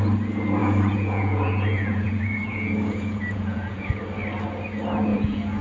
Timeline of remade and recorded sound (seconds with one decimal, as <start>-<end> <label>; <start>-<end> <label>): 0.0-0.6 recorded; 0.6-4.0 remade; 4.0-5.1 recorded; 5.1-5.6 remade